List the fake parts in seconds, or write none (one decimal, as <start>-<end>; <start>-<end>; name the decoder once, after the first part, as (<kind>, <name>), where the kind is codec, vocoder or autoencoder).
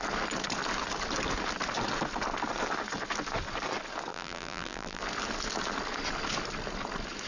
4.1-5.0 (vocoder, BigVGAN v2)